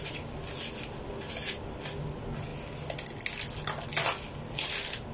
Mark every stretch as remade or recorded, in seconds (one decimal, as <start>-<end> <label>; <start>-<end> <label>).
0.0-5.1 recorded